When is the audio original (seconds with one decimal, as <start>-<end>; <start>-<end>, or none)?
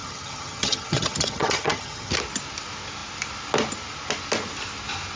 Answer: 2.1-5.2